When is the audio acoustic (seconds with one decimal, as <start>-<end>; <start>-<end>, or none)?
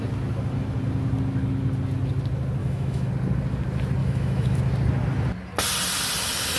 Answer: 0.0-2.6; 3.1-4.0; 4.6-6.6